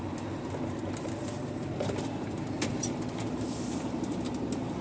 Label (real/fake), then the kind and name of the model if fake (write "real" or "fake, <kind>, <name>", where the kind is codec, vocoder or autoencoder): fake, vocoder, BigVGAN v2